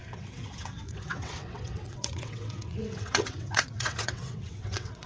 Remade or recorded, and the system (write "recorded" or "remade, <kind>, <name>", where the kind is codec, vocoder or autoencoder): remade, vocoder, WaveNeXt